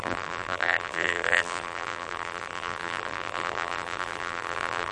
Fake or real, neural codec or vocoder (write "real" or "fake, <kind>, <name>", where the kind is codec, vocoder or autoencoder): fake, vocoder, BigVGAN v2